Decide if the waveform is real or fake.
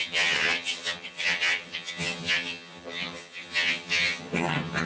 fake